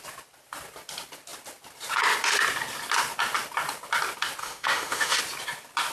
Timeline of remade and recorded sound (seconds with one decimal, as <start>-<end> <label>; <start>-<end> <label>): 0.0-4.4 recorded; 4.4-5.2 remade; 5.2-5.9 recorded